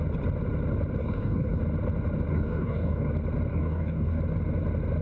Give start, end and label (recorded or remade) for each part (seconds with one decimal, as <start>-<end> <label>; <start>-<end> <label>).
0.0-1.0 recorded; 1.0-1.6 remade; 1.6-2.3 recorded; 2.3-3.1 remade; 3.1-3.5 recorded; 3.5-4.2 remade; 4.2-5.0 recorded